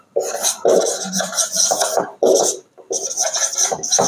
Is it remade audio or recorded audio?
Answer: recorded